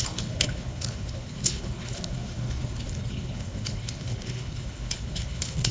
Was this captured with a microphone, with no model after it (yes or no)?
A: no